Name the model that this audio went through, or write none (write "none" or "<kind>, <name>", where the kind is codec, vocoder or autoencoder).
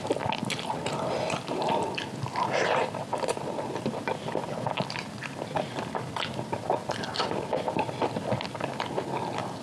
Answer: none